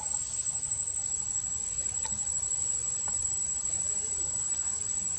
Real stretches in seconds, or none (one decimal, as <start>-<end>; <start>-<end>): 0.0-2.8; 4.7-5.2